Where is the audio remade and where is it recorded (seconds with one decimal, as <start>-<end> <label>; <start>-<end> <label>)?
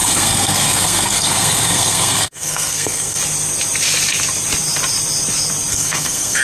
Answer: 0.0-3.2 remade; 3.2-5.7 recorded; 5.7-6.4 remade